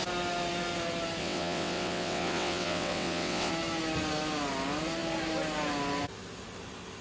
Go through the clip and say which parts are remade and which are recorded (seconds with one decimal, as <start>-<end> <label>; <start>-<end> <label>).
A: 0.0-1.2 recorded; 1.2-3.5 remade; 3.5-7.0 recorded